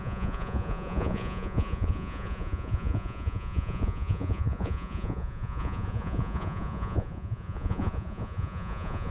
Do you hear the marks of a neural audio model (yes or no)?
yes